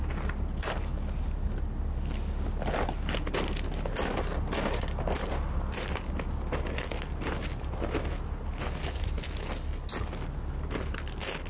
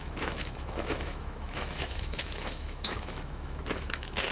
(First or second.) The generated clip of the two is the second